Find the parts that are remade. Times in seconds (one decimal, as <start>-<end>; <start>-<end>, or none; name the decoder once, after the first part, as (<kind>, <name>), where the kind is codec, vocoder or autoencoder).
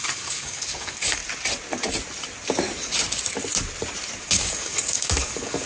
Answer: 0.0-1.2 (codec, DAC); 4.2-5.7